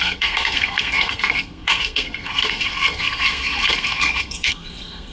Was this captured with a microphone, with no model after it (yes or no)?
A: no